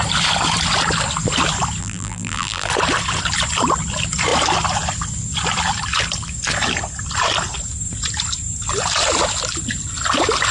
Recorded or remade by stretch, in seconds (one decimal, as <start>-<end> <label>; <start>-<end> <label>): 0.0-1.8 recorded; 1.8-2.7 remade; 2.7-10.5 recorded